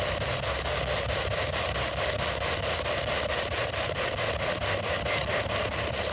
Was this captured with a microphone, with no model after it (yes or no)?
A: yes